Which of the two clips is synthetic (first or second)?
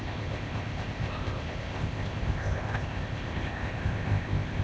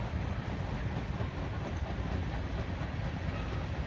first